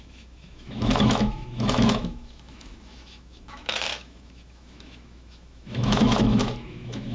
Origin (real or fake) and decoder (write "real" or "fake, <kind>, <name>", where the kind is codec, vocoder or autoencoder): fake, autoencoder, DAC-VAE